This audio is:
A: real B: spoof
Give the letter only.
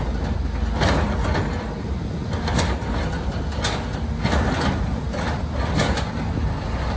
A